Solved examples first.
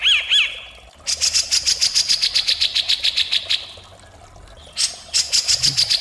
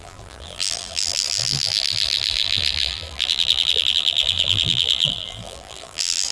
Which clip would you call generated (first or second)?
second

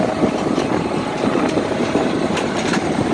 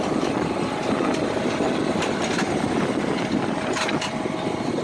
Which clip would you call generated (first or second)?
first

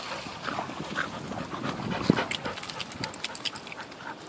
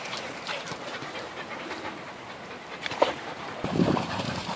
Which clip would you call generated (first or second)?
second